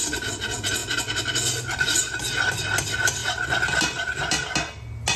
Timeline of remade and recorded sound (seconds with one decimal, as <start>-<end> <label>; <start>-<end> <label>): 0.0-5.2 recorded